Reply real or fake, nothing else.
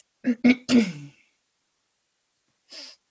real